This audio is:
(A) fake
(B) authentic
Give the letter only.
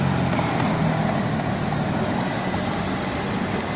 B